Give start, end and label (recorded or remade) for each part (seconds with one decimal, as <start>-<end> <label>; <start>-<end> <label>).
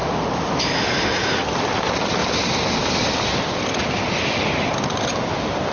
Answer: 0.0-5.7 recorded